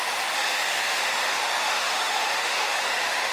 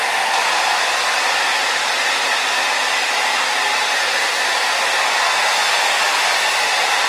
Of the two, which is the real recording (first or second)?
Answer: second